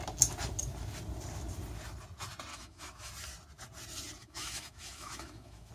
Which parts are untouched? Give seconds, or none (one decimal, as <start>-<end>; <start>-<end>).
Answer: 0.0-2.5; 3.1-4.2